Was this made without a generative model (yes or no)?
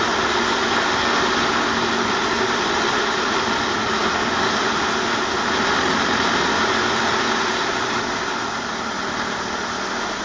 yes